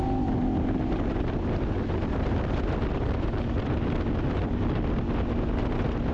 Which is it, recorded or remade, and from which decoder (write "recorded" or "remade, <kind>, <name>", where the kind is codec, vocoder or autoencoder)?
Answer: recorded